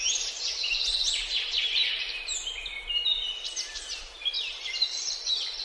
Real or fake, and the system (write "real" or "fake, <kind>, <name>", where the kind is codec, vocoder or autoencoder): real